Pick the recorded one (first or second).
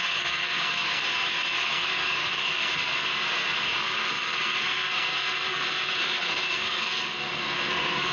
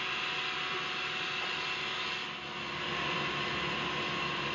second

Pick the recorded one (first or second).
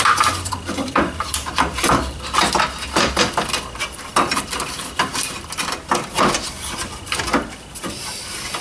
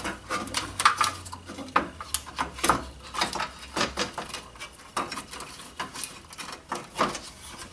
second